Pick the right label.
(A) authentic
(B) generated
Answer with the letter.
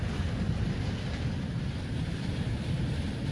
A